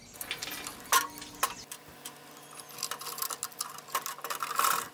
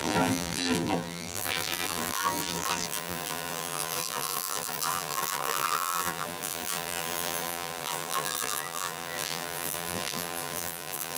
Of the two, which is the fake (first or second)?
second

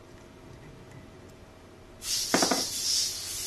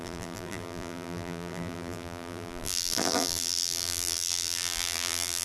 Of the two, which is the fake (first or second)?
second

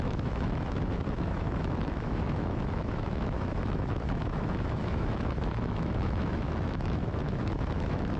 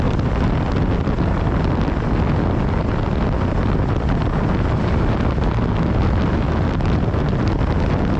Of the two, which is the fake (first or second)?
first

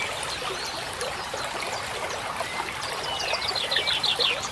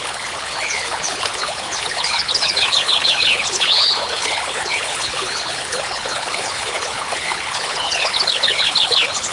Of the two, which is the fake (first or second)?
second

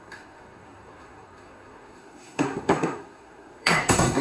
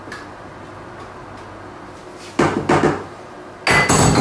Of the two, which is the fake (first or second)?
first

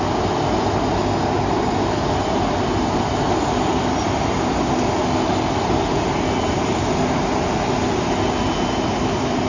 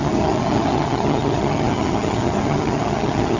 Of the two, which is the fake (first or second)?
second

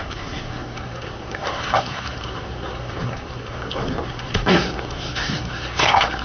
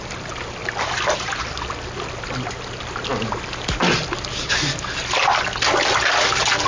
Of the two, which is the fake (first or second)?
first